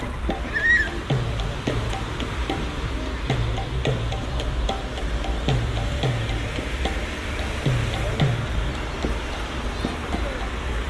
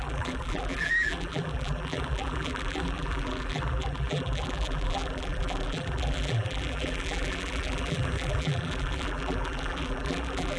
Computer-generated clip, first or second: second